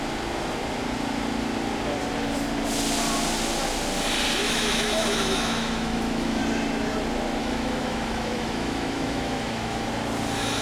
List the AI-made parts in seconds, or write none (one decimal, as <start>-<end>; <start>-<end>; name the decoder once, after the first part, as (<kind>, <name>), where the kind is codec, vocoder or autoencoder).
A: 4.4-6.4 (autoencoder, DAC-VAE); 7.4-9.9